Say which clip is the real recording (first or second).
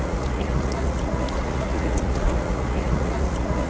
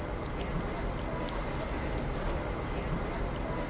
second